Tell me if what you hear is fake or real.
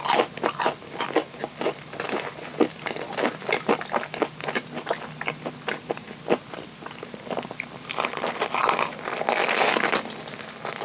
real